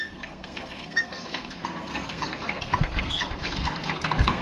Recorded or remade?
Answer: remade